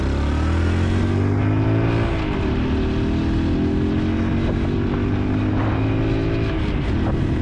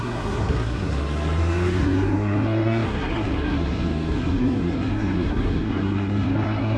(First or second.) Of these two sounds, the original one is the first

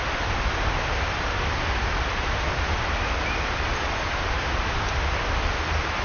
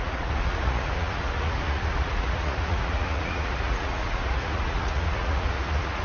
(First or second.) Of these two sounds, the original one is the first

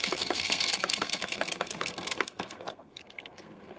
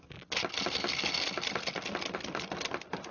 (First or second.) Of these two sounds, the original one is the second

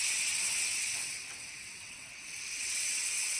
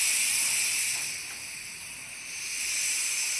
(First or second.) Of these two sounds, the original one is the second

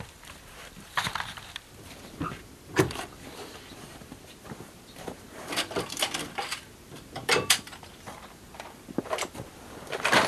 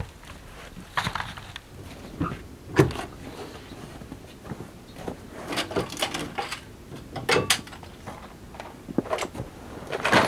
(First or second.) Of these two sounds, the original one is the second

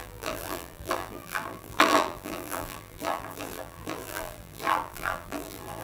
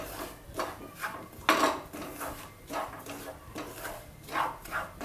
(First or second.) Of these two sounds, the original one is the second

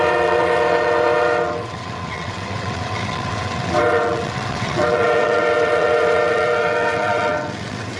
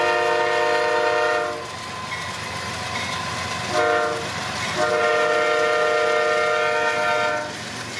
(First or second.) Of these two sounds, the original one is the second